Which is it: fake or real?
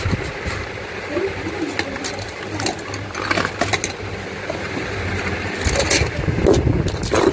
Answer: real